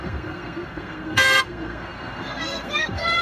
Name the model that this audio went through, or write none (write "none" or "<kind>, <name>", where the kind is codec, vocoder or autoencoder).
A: codec, SNAC